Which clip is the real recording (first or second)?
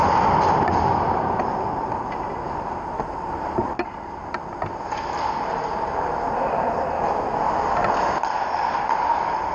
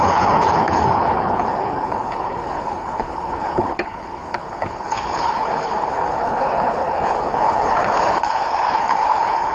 first